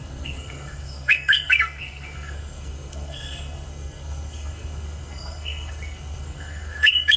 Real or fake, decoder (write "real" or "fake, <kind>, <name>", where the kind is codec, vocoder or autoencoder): fake, codec, SNAC